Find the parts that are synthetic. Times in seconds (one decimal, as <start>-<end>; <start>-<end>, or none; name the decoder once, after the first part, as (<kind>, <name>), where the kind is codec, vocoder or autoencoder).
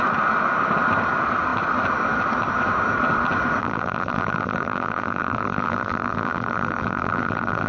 3.6-7.7 (vocoder, BigVGAN v2)